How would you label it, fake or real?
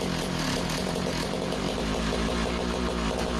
real